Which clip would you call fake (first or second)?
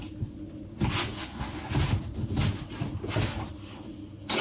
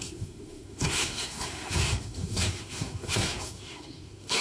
second